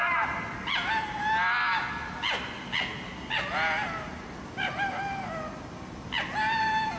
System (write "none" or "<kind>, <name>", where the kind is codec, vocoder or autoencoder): none